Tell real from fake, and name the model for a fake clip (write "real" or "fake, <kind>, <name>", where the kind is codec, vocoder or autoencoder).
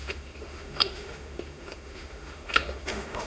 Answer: fake, autoencoder, DAC-VAE